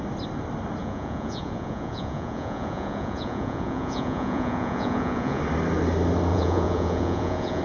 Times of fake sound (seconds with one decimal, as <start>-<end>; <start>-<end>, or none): 0.8-5.4; 6.3-7.6